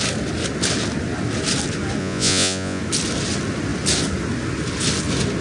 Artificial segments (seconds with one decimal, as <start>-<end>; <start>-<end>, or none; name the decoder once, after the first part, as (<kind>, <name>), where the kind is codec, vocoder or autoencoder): 2.0-2.8 (vocoder, Vocos)